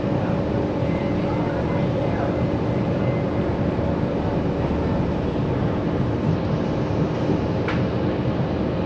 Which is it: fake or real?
real